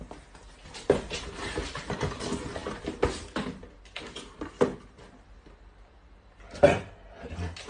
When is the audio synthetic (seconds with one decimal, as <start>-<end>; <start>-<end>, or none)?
none

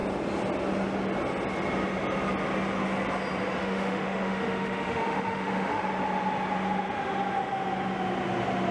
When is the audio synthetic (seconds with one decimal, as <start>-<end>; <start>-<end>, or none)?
3.6-5.9